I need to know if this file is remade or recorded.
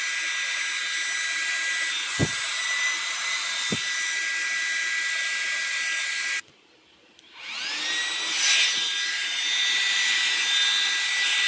recorded